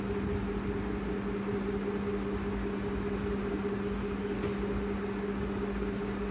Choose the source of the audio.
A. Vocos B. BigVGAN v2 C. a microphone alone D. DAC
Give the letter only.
C